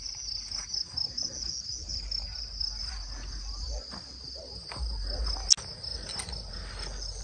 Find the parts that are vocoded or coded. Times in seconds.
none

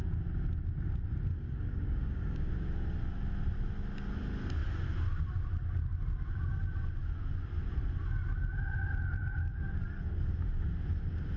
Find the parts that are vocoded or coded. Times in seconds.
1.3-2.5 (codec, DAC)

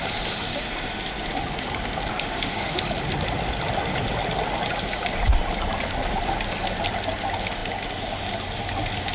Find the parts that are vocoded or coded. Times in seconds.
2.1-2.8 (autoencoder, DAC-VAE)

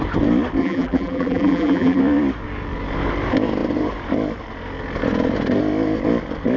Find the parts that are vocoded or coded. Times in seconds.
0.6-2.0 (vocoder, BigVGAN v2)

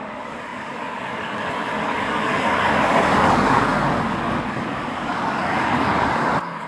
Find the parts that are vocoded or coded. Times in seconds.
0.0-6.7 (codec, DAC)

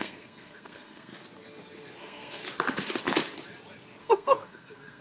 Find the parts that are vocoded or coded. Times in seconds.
0.0-1.1 (codec, SNAC); 2.0-2.4; 4.0-5.0

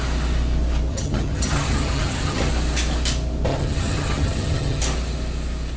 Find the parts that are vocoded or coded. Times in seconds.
0.9-2.5 (vocoder, HiFi-GAN); 3.5-4.8

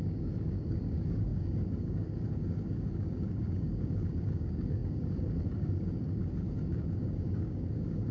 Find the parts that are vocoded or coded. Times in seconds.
0.0-8.1 (codec, DAC)